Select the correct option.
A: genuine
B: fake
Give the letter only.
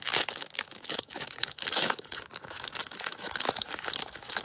B